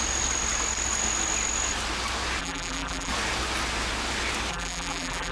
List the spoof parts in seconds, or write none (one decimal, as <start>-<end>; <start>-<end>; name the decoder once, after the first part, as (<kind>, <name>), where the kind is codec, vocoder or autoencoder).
2.4-3.1 (vocoder, BigVGAN v2); 4.5-5.3

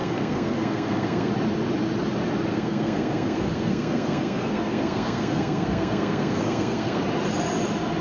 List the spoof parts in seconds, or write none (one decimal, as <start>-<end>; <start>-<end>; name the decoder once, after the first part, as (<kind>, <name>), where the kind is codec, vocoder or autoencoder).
0.0-1.3 (codec, SNAC); 2.5-7.0

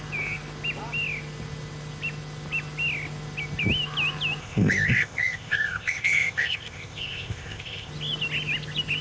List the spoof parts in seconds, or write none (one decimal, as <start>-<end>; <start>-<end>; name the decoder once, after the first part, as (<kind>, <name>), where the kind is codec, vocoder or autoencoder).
4.4-7.9 (codec, ZipCodec)

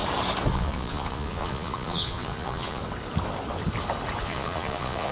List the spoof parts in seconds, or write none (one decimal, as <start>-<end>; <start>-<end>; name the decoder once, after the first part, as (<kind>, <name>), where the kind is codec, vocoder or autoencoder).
0.5-2.8 (vocoder, Vocos); 4.2-5.1